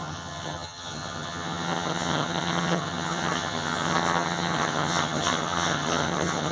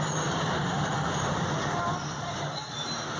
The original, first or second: second